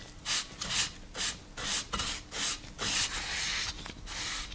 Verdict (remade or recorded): recorded